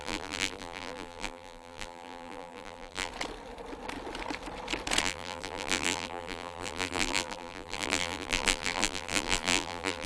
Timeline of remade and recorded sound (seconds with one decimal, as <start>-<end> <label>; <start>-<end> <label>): 0.0-3.1 remade; 3.1-5.0 recorded; 5.0-10.1 remade